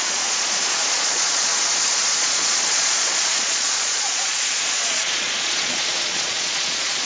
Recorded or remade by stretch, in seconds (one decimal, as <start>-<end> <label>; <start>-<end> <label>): 0.0-1.5 remade; 1.5-2.2 recorded; 2.2-7.0 remade